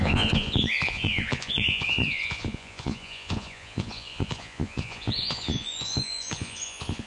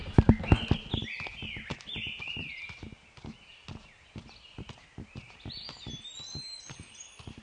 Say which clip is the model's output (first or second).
first